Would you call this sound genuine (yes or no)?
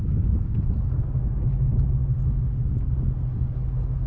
yes